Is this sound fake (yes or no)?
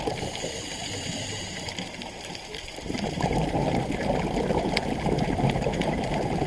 yes